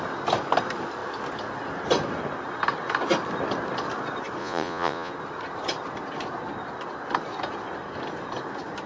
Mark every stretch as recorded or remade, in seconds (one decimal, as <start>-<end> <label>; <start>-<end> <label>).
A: 0.0-4.4 recorded; 4.4-5.1 remade; 5.1-8.9 recorded